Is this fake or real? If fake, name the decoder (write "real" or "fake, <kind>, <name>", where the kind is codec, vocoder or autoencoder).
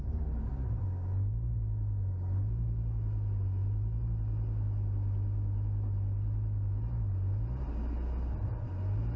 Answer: real